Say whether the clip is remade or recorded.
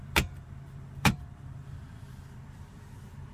remade